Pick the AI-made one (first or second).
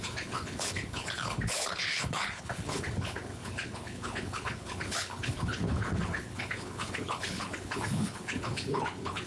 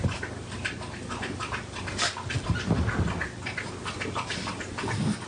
first